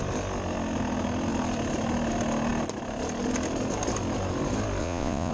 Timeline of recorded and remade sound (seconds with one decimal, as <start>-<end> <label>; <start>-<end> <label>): 0.0-4.8 recorded; 4.8-5.3 remade